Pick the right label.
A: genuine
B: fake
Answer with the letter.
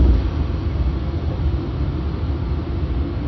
A